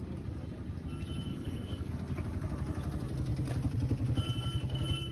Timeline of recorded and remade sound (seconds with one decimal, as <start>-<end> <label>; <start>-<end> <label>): 0.0-1.3 recorded; 1.3-1.9 remade; 1.9-5.1 recorded